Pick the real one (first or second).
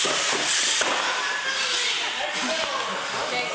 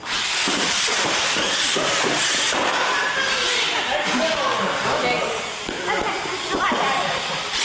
first